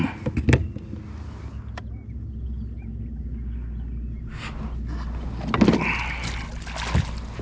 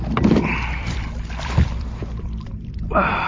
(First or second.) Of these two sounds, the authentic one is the first